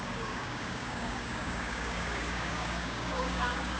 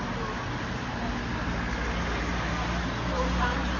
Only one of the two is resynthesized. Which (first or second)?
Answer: first